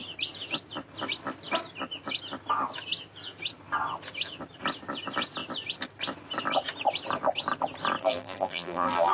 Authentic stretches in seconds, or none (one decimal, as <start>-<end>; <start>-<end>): 0.0-8.0